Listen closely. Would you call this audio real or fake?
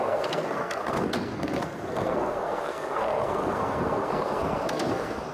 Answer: fake